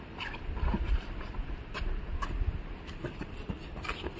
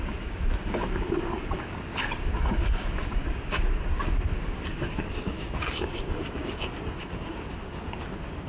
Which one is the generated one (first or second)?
second